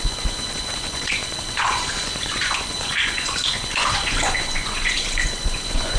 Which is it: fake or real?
fake